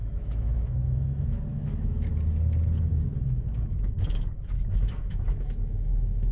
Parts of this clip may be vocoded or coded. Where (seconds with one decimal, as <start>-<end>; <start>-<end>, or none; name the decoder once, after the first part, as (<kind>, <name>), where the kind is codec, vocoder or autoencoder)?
0.0-2.1 (autoencoder, DAC-VAE); 2.9-6.3